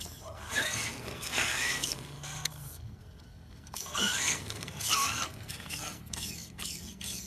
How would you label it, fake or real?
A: fake